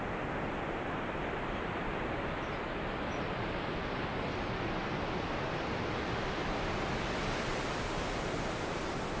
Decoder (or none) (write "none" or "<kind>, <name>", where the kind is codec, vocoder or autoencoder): none